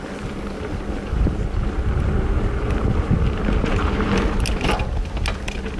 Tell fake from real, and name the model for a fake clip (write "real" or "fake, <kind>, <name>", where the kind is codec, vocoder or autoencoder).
real